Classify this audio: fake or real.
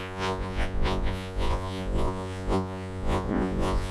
fake